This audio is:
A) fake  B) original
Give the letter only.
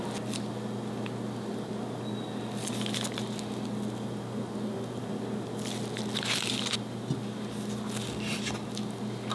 B